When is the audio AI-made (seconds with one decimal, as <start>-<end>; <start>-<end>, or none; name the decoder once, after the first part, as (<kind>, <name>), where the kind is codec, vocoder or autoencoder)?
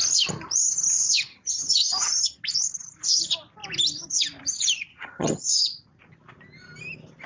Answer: 1.3-2.4 (vocoder, HiFi-GAN); 4.9-5.4